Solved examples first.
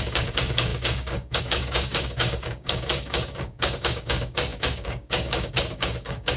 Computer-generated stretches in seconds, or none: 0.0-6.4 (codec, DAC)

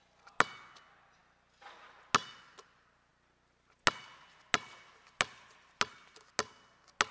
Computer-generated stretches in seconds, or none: none

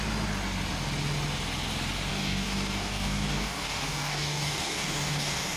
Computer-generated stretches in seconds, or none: 2.1-5.6 (codec, DAC)

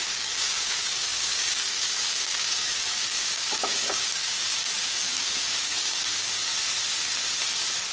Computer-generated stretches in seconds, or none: 0.0-6.5 (codec, DAC)

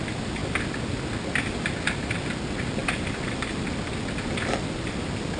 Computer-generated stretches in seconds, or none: none

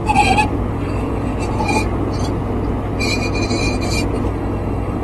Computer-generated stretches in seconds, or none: 0.7-1.3 (codec, DAC); 4.3-5.0

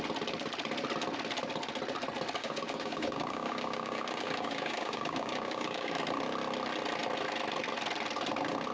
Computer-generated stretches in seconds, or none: 2.4-6.0 (codec, DAC)

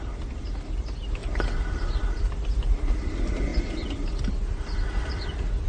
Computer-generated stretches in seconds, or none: none